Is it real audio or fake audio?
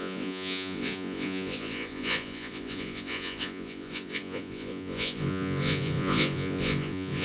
fake